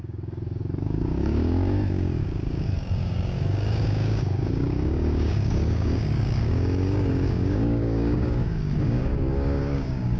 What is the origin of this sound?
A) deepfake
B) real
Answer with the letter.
A